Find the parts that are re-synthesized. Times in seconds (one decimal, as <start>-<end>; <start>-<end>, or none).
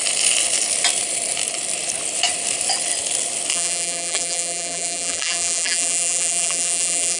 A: 3.5-7.2